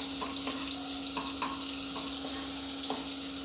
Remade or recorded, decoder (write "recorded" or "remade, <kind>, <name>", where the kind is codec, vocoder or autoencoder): recorded